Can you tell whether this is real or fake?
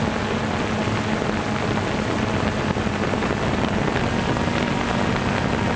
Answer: real